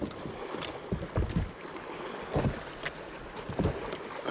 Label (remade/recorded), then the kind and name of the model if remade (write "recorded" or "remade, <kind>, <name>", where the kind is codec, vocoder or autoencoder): recorded